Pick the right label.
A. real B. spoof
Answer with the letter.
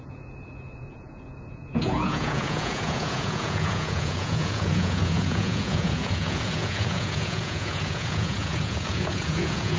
B